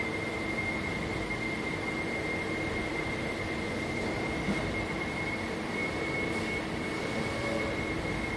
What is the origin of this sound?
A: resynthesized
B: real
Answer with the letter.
A